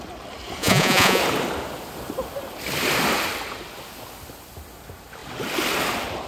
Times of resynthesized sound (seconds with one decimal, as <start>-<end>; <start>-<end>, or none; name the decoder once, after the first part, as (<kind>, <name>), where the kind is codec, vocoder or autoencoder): 0.6-1.2 (vocoder, Vocos)